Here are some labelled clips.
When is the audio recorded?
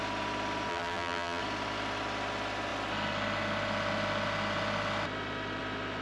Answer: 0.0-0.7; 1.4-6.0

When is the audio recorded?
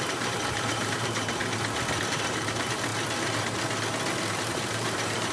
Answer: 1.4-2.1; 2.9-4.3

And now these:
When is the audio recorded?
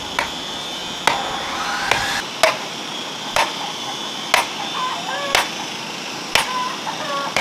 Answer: 0.8-3.3; 4.0-6.4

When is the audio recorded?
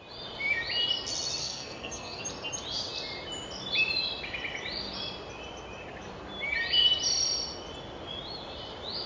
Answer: 0.0-1.4; 2.2-9.1